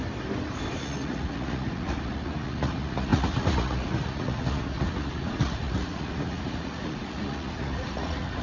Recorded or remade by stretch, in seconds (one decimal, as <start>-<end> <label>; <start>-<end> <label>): 0.0-0.8 recorded; 0.8-8.4 remade